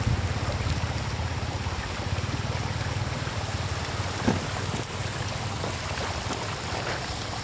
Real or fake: real